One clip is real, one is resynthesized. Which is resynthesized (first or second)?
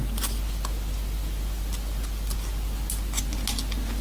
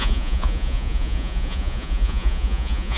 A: second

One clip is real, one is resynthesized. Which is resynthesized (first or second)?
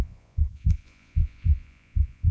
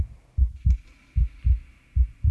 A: first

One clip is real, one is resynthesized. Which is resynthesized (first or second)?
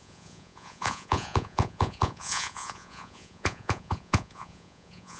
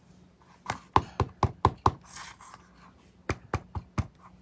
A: first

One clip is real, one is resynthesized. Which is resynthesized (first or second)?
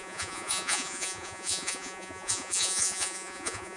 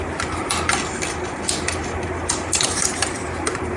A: first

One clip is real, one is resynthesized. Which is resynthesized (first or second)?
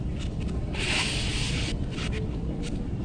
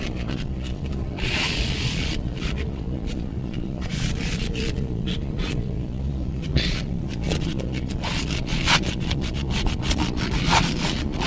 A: second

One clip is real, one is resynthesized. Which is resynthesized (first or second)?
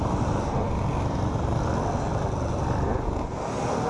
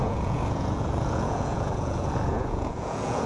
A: second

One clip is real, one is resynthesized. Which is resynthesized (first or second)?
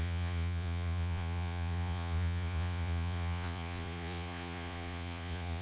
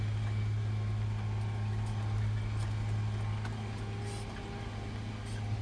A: first